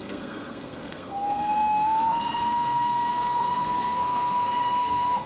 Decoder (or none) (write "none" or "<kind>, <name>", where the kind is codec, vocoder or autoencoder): codec, SNAC